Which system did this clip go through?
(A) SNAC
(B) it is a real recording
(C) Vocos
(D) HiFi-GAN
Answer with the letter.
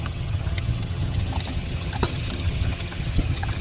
D